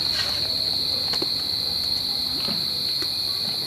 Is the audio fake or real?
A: real